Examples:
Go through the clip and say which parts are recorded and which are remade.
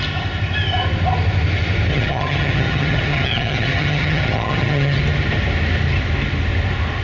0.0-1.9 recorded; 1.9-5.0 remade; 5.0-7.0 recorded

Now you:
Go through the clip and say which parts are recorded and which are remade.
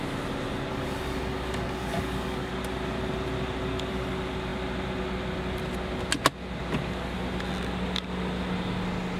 0.0-0.7 recorded; 0.7-2.5 remade; 2.5-9.2 recorded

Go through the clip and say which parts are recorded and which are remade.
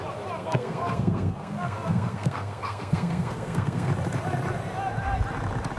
0.0-0.4 recorded; 0.4-3.9 remade; 3.9-5.8 recorded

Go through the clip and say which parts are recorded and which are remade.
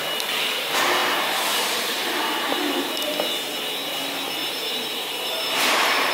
0.0-1.0 recorded; 1.0-3.2 remade; 3.2-4.4 recorded; 4.4-6.1 remade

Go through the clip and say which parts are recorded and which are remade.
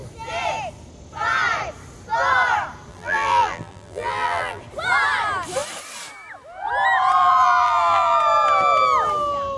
0.0-2.9 recorded; 2.9-4.6 remade; 4.6-7.2 recorded; 7.2-8.2 remade; 8.2-9.6 recorded